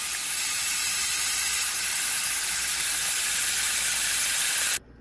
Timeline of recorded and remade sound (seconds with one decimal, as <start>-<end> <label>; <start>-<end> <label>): 0.0-2.4 remade; 2.4-5.0 recorded